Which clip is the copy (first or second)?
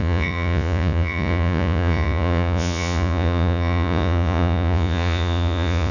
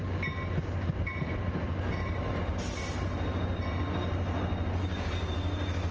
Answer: first